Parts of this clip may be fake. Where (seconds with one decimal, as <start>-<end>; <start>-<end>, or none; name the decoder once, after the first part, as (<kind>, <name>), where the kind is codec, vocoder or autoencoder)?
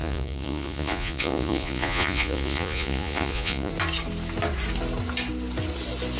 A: 0.0-3.7 (vocoder, Vocos)